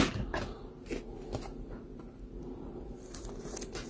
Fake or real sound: real